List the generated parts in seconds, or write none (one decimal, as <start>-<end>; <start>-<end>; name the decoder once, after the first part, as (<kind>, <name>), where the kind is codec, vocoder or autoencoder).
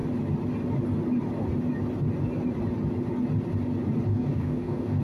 4.1-5.0 (codec, DAC)